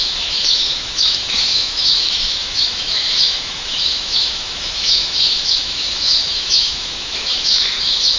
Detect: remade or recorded remade